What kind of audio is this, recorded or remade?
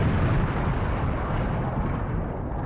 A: recorded